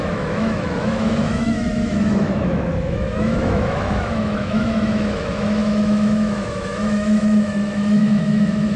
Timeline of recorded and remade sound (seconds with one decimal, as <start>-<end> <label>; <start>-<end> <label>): 0.0-8.8 remade